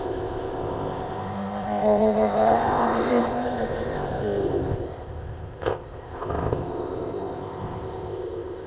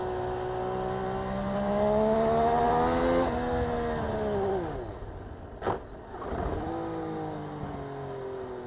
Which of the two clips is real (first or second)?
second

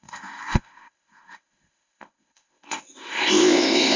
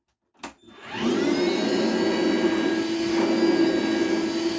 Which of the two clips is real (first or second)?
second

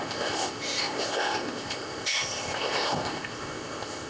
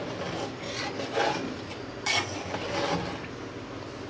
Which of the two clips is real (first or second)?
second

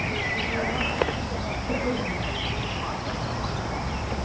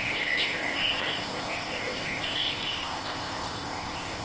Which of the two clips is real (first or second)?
first